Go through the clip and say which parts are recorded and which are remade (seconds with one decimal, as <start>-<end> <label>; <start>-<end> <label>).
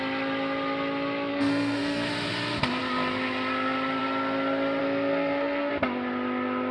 0.0-1.3 recorded; 1.3-2.1 remade; 2.1-4.8 recorded; 4.8-5.7 remade; 5.7-6.7 recorded